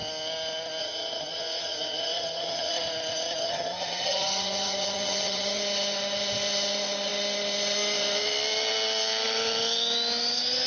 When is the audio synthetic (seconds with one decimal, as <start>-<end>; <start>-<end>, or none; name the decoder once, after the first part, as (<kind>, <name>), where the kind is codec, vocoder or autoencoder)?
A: 0.8-2.7 (vocoder, HiFi-GAN); 3.4-5.6